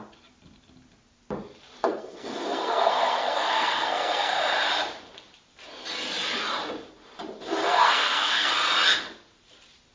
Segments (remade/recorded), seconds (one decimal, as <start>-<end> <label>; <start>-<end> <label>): 0.0-1.8 recorded; 1.8-4.4 remade; 4.4-7.6 recorded; 7.6-8.5 remade; 8.5-9.9 recorded